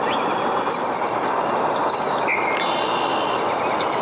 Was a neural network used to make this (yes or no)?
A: no